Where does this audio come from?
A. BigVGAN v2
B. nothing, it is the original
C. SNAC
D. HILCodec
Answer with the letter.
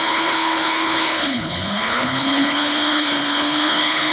D